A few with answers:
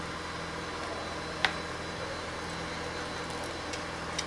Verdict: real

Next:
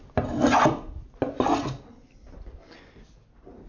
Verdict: real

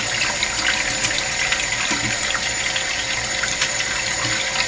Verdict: real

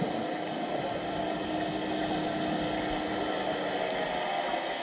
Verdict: real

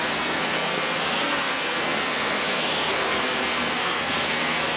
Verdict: fake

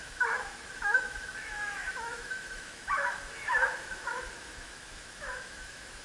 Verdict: fake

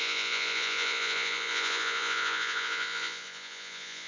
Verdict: fake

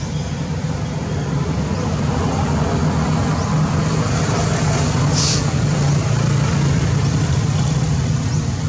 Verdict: real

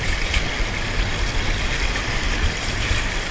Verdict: real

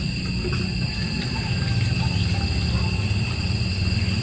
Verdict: real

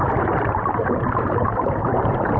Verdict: fake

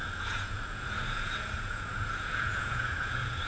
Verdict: fake